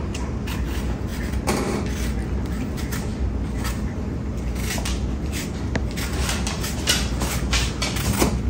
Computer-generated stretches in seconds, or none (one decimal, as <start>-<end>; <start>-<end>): none